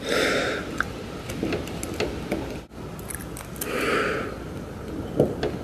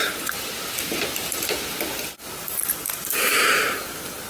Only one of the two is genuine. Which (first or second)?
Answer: first